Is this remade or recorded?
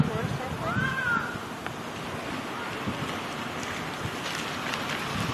recorded